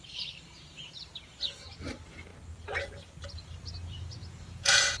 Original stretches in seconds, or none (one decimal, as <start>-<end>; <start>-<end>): 0.0-4.2